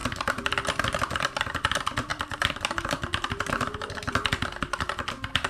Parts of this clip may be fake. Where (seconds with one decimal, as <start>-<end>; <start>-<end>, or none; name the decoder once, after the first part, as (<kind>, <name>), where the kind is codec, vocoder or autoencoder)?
0.0-0.8 (vocoder, BigVGAN v2); 2.1-3.5